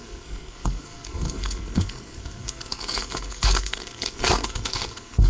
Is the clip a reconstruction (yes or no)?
yes